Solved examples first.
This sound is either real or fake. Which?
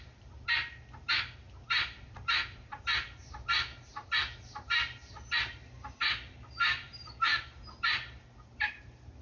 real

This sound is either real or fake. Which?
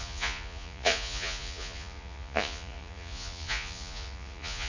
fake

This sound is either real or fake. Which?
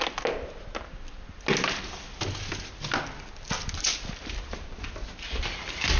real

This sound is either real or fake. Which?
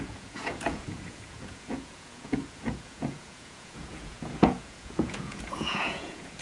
fake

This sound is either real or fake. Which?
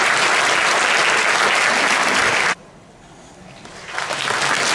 real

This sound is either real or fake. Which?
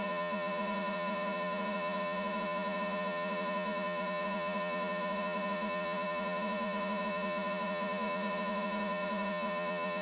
fake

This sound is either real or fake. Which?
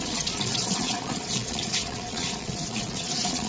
fake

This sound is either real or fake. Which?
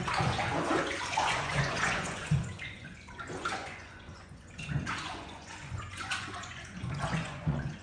fake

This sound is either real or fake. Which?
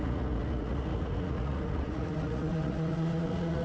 fake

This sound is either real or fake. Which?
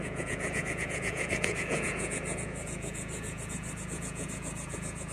fake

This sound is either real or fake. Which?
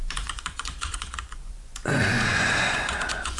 fake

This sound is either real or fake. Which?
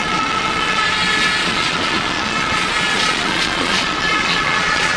fake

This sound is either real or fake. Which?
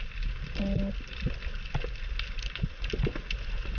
real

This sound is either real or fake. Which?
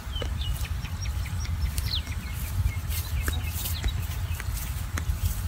real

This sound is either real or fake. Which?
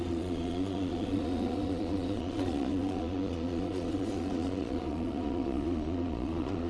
fake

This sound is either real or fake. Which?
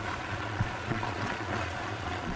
fake